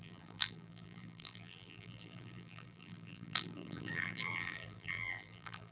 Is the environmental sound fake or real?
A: fake